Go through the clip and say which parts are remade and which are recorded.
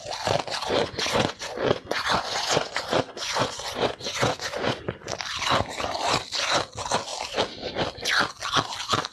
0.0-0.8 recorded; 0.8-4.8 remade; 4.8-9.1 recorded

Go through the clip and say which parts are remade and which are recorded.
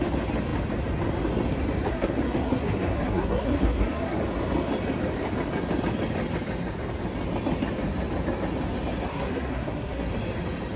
0.0-1.9 recorded; 1.9-4.2 remade; 4.2-9.1 recorded; 9.1-10.1 remade; 10.1-10.8 recorded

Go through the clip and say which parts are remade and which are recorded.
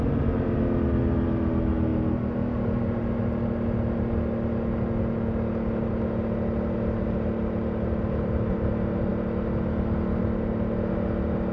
0.0-11.5 recorded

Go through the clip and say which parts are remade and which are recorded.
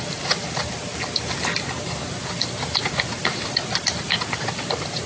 0.0-0.7 remade; 0.7-1.7 recorded; 1.7-5.1 remade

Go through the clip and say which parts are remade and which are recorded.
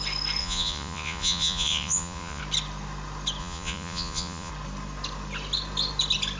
0.0-0.4 recorded; 0.4-2.4 remade; 2.4-3.4 recorded; 3.4-4.5 remade; 4.5-6.4 recorded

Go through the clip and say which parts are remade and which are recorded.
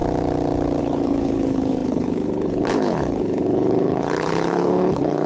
0.0-0.8 recorded; 0.8-5.3 remade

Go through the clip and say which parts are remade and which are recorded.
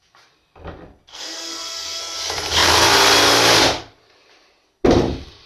0.0-1.1 recorded; 1.1-2.0 remade; 2.0-5.5 recorded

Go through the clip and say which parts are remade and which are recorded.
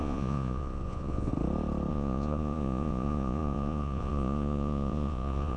0.0-1.3 remade; 1.3-1.9 recorded; 1.9-5.6 remade